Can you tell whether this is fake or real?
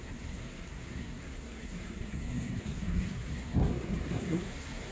fake